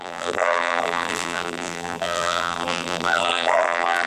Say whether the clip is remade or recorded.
remade